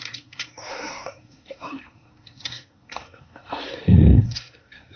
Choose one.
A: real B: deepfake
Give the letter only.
B